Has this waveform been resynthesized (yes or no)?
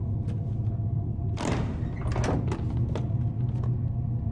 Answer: no